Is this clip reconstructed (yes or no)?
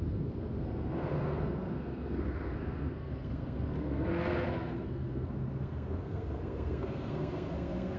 yes